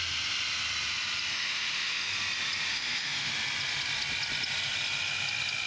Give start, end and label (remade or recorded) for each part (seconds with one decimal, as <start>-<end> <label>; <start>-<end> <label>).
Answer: 0.0-1.3 recorded; 1.3-2.1 remade; 2.1-2.7 recorded; 2.7-3.3 remade; 3.3-5.7 recorded